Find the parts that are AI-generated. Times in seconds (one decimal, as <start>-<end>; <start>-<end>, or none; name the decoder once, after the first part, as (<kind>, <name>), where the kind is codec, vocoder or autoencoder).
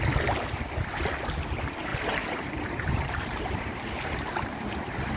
1.9-5.2 (vocoder, BigVGAN v2)